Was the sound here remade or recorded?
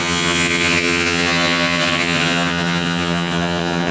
remade